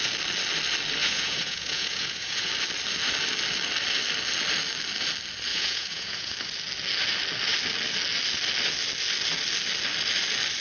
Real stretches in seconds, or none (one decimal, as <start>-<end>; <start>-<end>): 0.0-1.0; 2.5-5.5; 6.3-10.6